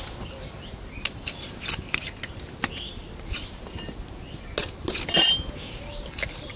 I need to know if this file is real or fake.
real